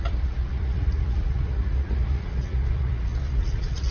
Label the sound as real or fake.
fake